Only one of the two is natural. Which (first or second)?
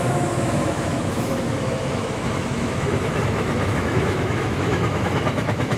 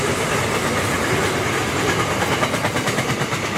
second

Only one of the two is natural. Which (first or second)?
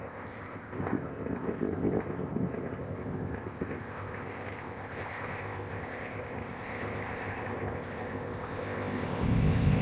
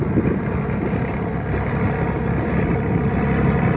second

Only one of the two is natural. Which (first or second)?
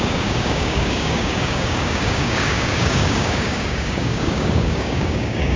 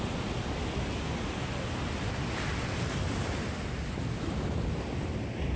second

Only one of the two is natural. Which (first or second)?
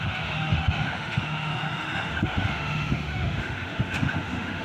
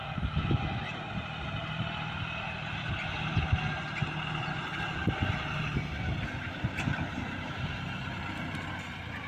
second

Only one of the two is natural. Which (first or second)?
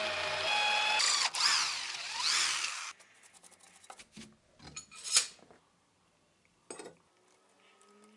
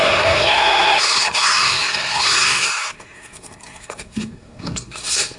first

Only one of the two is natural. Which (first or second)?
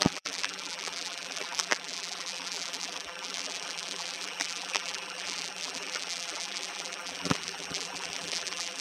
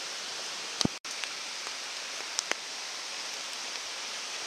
second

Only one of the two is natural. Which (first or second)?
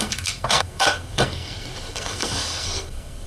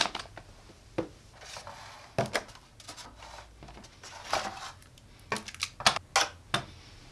second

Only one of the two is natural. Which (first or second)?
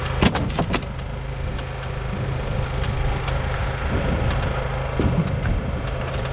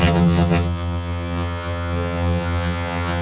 first